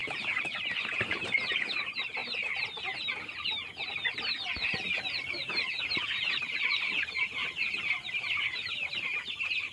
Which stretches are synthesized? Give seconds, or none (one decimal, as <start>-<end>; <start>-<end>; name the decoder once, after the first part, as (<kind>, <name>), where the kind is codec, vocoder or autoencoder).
0.0-2.2 (vocoder, BigVGAN v2); 5.8-7.4; 7.9-9.7

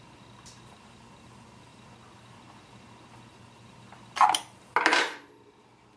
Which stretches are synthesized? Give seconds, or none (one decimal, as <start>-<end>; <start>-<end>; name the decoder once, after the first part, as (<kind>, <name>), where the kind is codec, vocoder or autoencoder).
none

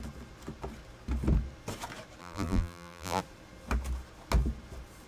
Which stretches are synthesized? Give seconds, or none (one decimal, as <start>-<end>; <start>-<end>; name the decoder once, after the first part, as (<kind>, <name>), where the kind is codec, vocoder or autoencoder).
2.2-3.2 (vocoder, BigVGAN v2)